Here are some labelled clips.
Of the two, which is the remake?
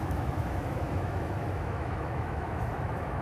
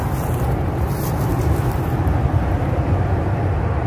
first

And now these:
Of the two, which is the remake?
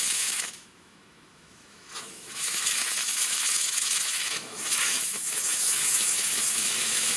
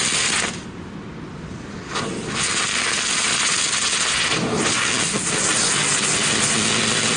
first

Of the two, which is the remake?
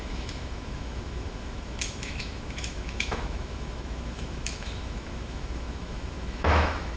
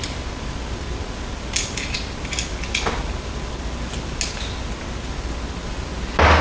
first